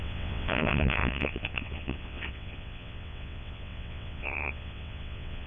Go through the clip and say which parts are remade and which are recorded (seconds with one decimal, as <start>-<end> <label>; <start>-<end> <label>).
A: 0.0-5.5 remade